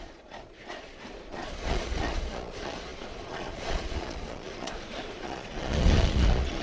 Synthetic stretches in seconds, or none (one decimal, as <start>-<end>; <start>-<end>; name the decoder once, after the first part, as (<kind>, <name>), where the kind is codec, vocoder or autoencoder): 0.0-6.6 (vocoder, Vocos)